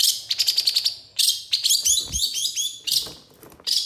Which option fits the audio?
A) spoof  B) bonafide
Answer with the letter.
B